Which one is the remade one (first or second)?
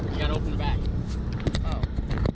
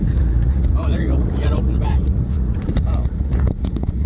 second